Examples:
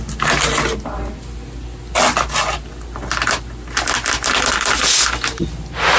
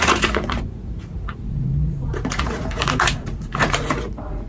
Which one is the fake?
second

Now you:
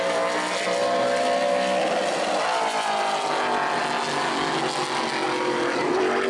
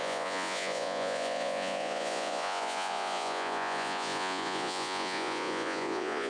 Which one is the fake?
second